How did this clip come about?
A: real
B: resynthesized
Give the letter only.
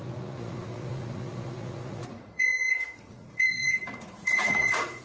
B